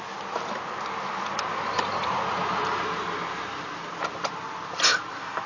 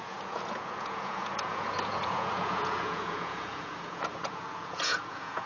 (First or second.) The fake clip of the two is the second